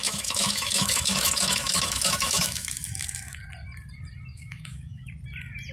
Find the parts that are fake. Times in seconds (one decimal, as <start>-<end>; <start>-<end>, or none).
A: 0.0-3.4; 4.3-5.1